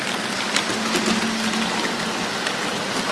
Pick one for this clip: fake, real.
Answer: real